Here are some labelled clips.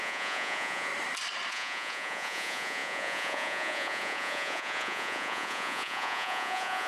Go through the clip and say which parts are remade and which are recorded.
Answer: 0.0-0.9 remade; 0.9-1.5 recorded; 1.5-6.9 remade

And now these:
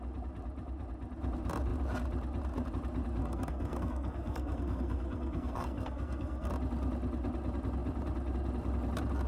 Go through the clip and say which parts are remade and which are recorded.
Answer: 0.0-3.2 recorded; 3.2-6.5 remade; 6.5-9.3 recorded

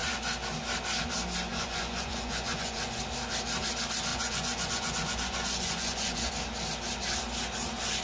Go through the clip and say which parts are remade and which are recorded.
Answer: 0.0-1.5 recorded; 1.5-3.0 remade; 3.0-4.1 recorded; 4.1-6.3 remade; 6.3-8.0 recorded

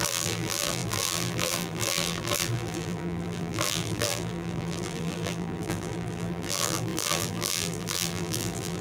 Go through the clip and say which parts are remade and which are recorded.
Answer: 0.0-8.8 remade

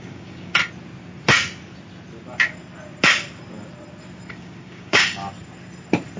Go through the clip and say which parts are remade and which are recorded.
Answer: 0.0-0.6 remade; 0.6-4.3 recorded; 4.3-5.2 remade; 5.2-6.2 recorded

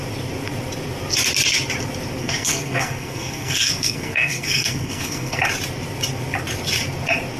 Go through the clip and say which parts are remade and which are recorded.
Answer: 0.0-2.2 recorded; 2.2-5.4 remade; 5.4-7.4 recorded

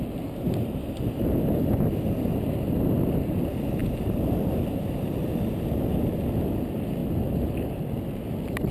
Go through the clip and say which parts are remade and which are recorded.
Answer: 0.0-3.8 recorded; 3.8-5.1 remade; 5.1-7.0 recorded; 7.0-7.7 remade; 7.7-8.7 recorded

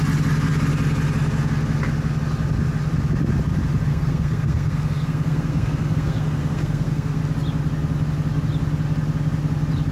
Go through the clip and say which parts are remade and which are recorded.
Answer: 0.0-3.9 recorded; 3.9-7.2 remade; 7.2-9.9 recorded